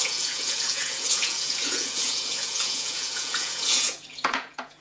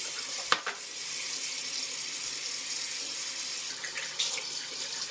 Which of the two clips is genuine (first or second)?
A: second